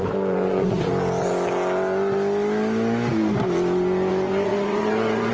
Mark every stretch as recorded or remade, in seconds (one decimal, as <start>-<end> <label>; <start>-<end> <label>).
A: 0.0-0.9 remade; 0.9-4.1 recorded; 4.1-5.3 remade

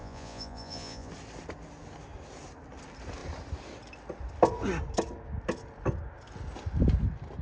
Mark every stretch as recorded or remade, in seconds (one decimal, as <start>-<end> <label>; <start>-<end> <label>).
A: 0.0-1.1 remade; 1.1-7.4 recorded

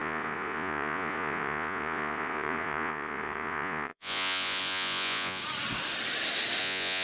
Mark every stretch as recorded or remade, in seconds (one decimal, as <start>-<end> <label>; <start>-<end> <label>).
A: 0.0-5.4 remade; 5.4-6.6 recorded; 6.6-7.0 remade

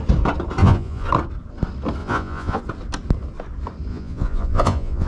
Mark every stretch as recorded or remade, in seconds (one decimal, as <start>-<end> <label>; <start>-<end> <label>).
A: 0.0-0.6 recorded; 0.6-1.1 remade; 1.1-2.0 recorded; 2.0-2.6 remade; 2.6-3.9 recorded; 3.9-5.1 remade

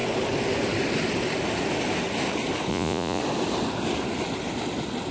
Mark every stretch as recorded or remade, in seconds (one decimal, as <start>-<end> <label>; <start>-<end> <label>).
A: 0.0-2.7 recorded; 2.7-3.2 remade; 3.2-5.1 recorded

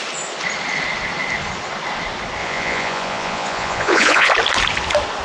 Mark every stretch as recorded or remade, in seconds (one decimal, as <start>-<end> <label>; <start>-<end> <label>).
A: 0.0-2.4 recorded; 2.4-4.3 remade; 4.3-5.2 recorded